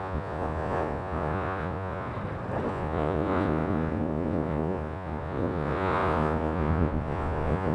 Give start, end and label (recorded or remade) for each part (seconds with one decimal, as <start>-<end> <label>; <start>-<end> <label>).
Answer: 0.0-2.1 remade; 2.1-2.7 recorded; 2.7-7.7 remade